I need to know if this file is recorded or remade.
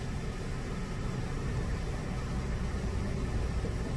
recorded